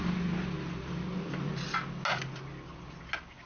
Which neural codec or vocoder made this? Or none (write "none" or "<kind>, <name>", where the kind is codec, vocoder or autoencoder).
none